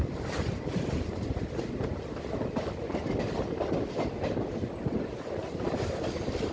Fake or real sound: real